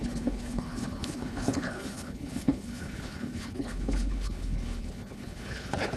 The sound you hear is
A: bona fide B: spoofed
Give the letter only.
B